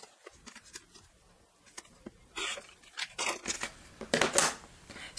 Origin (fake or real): real